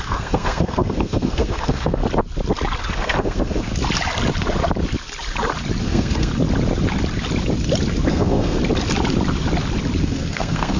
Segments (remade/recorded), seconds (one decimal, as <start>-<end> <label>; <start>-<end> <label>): 0.0-2.0 remade; 2.0-2.9 recorded; 2.9-3.7 remade; 3.7-5.8 recorded; 5.8-6.3 remade; 6.3-8.1 recorded; 8.1-8.6 remade; 8.6-10.0 recorded; 10.0-10.8 remade